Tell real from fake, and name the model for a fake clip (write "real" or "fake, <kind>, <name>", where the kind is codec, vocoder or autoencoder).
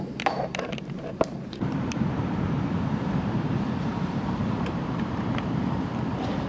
fake, vocoder, BigVGAN v2